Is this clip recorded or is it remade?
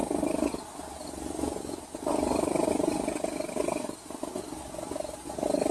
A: recorded